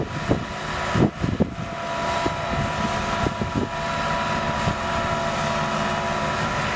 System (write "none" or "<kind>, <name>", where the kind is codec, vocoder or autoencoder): none